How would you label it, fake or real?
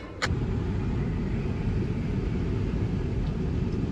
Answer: real